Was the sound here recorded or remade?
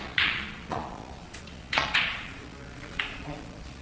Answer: remade